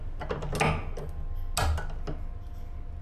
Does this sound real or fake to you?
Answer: real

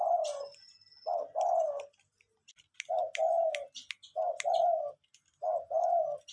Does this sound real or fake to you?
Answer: real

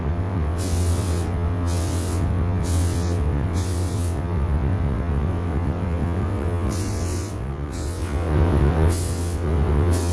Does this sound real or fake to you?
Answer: fake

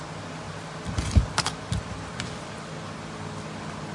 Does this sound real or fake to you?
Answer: real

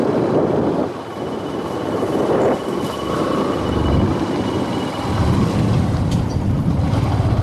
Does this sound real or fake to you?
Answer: fake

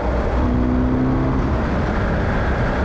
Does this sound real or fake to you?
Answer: real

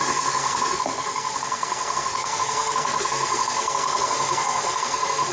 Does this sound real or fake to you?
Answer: fake